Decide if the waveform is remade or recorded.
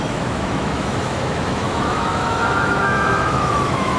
remade